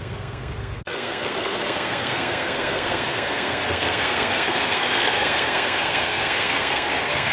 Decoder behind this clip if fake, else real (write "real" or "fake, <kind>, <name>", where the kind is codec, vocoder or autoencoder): fake, codec, SNAC